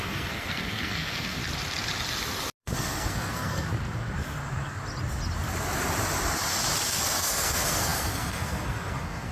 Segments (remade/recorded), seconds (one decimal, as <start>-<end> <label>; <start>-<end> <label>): 0.0-1.4 remade; 1.4-2.6 recorded; 2.6-3.7 remade; 3.7-7.0 recorded; 7.0-9.3 remade